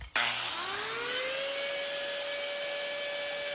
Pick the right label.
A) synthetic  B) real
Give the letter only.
B